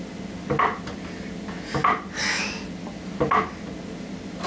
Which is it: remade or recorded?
recorded